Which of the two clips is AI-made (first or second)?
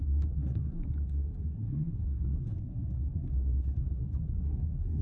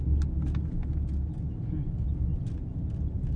first